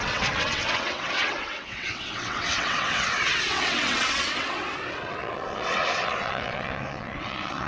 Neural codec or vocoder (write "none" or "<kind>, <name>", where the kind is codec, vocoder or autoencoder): vocoder, WaveNeXt